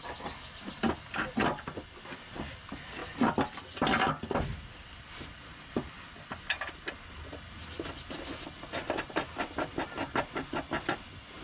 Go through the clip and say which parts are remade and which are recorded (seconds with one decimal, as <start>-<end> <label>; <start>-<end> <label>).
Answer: 0.0-11.4 recorded